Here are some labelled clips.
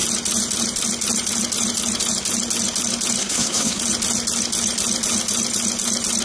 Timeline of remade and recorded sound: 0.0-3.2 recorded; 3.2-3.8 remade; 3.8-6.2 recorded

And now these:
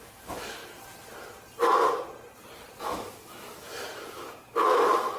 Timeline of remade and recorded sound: 0.0-0.6 remade; 0.6-2.8 recorded; 2.8-5.2 remade

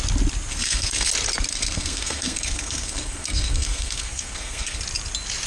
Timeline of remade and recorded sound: 0.0-0.5 recorded; 0.5-1.1 remade; 1.1-1.5 recorded; 1.5-4.8 remade; 4.8-5.5 recorded